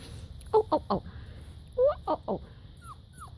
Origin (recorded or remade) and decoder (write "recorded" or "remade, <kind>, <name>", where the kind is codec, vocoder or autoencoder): recorded